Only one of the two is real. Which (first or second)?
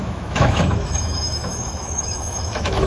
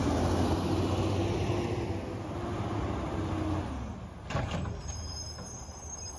second